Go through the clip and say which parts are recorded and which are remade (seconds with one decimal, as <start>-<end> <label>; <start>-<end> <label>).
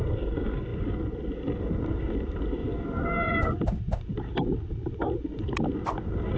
0.0-6.4 recorded